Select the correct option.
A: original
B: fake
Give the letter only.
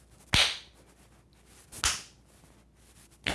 A